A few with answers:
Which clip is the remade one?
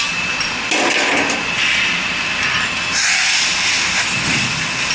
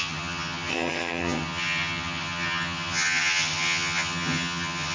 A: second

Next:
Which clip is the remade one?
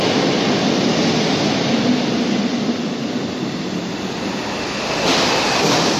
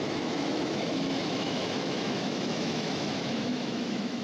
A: second